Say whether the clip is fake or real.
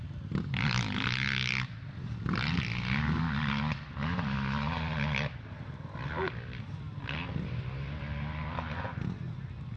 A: real